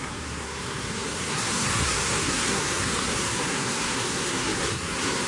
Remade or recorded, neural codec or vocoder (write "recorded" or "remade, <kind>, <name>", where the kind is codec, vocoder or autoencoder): remade, codec, SNAC